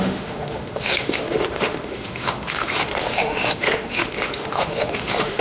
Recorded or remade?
remade